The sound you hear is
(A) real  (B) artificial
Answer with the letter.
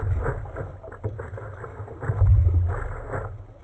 A